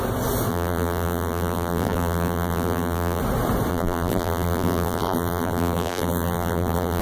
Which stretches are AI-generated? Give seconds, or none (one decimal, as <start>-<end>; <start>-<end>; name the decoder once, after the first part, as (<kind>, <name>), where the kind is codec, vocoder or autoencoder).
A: 0.5-3.2 (vocoder, BigVGAN v2); 3.7-7.0